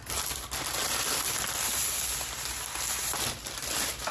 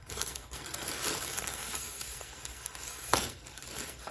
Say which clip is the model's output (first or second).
second